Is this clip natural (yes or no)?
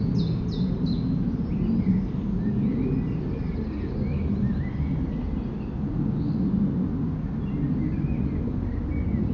yes